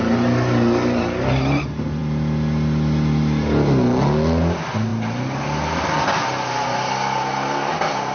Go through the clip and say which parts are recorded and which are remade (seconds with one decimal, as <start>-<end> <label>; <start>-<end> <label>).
0.0-8.1 recorded

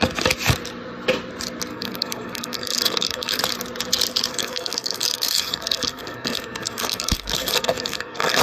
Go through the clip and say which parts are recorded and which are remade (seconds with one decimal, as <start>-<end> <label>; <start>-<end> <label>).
0.0-1.7 recorded; 1.7-3.4 remade; 3.4-4.3 recorded; 4.3-8.4 remade

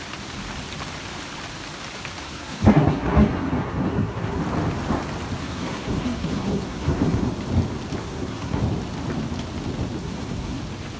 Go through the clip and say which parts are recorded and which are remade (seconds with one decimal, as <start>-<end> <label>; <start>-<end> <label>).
0.0-2.2 recorded; 2.2-4.4 remade; 4.4-5.4 recorded; 5.4-7.3 remade; 7.3-8.0 recorded; 8.0-8.6 remade; 8.6-10.0 recorded; 10.0-10.6 remade; 10.6-11.0 recorded

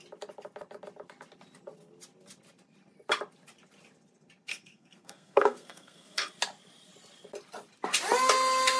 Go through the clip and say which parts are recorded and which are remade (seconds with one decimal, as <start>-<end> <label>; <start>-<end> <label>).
0.0-4.5 recorded; 4.5-6.3 remade; 6.3-8.8 recorded

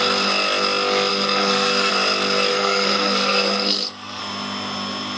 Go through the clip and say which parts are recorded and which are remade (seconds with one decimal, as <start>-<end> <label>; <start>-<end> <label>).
0.0-1.1 recorded; 1.1-1.9 remade; 1.9-2.5 recorded; 2.5-4.2 remade; 4.2-5.2 recorded

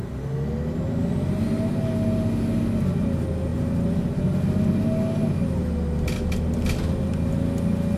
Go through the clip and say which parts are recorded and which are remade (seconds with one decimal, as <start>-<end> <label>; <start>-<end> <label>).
0.0-8.0 recorded

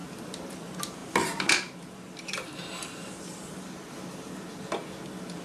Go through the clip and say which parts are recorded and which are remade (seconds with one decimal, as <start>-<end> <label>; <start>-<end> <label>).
0.0-5.4 recorded

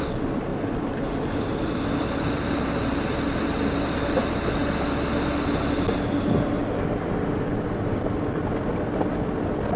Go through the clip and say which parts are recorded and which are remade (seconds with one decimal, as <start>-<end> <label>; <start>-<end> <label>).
0.0-9.8 recorded